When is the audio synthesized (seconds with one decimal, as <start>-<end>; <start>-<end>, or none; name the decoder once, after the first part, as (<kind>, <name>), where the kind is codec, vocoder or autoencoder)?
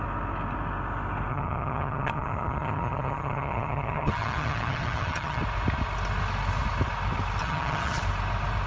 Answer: 1.3-5.4 (vocoder, HiFi-GAN); 7.4-8.0